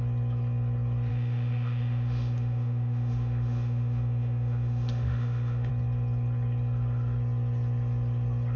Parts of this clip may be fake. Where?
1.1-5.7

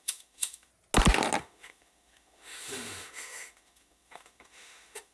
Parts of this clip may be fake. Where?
0.0-0.7; 1.4-5.1

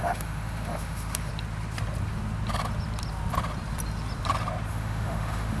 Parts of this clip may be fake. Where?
0.0-1.3; 4.7-5.6

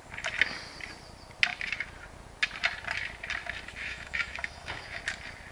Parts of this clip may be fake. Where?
3.8-5.0

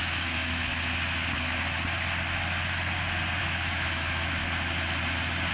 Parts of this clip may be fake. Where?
0.0-0.7; 3.4-4.4

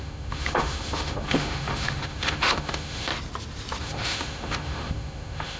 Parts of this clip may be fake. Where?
0.0-3.1; 3.8-5.6

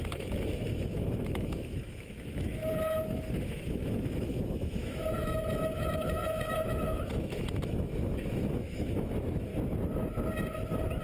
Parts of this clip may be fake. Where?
0.0-9.5

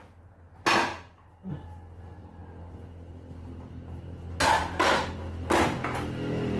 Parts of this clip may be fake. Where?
none